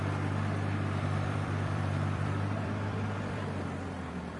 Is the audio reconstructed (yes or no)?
yes